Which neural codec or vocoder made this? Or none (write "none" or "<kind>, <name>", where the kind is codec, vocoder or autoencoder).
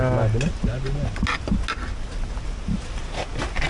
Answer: none